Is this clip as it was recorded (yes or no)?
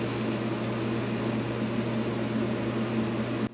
yes